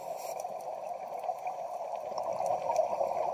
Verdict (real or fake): real